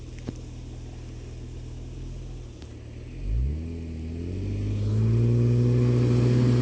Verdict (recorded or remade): recorded